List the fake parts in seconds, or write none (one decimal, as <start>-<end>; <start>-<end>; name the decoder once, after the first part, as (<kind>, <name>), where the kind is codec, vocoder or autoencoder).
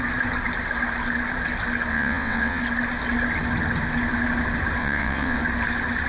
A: 1.9-2.6 (vocoder, WaveNeXt); 4.8-5.4